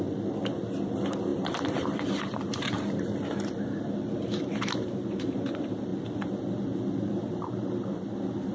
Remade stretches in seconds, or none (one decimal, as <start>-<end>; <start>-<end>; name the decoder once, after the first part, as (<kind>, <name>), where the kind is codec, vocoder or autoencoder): 1.3-3.9 (vocoder, BigVGAN v2)